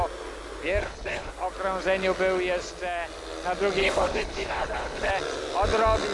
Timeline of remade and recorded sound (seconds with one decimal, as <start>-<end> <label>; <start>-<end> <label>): 0.0-0.8 recorded; 0.8-1.3 remade; 1.3-3.8 recorded; 3.8-5.1 remade; 5.1-6.1 recorded